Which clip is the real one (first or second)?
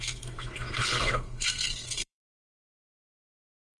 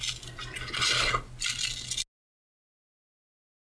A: second